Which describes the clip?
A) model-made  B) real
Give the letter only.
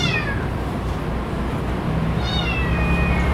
B